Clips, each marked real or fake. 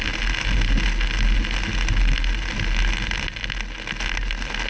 real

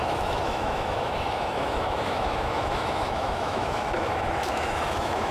fake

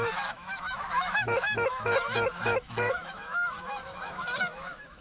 fake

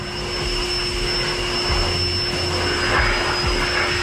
real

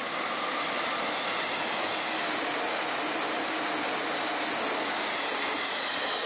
real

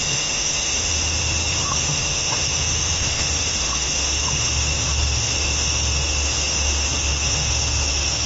fake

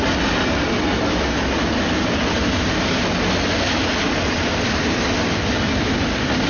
real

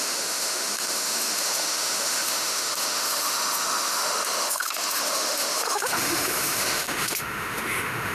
fake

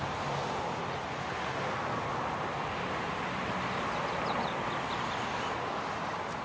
real